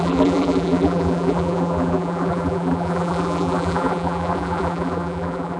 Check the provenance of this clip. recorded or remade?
remade